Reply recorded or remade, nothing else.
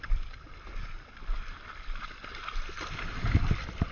remade